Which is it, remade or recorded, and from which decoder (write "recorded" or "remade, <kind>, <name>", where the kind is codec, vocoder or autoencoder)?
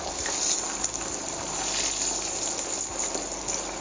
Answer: recorded